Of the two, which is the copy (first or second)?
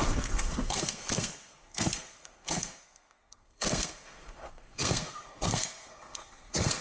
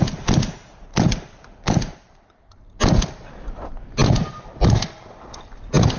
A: first